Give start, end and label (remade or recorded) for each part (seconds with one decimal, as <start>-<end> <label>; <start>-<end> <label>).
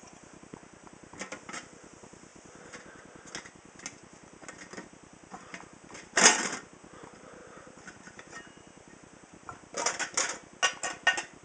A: 0.0-11.4 recorded